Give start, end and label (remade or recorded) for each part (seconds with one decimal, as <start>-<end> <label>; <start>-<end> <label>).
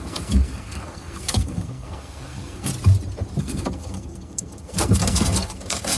0.0-2.7 remade; 2.7-3.4 recorded; 3.4-6.0 remade